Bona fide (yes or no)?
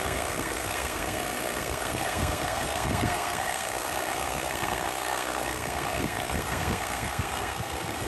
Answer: no